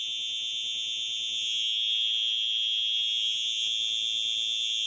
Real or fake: real